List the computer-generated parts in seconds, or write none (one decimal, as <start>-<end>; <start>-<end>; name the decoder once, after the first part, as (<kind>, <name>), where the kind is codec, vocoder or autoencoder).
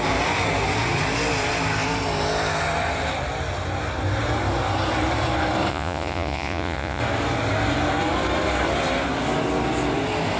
5.7-7.0 (vocoder, Vocos)